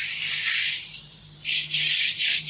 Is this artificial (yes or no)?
no